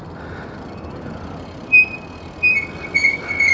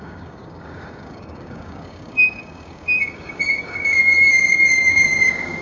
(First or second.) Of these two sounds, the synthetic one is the second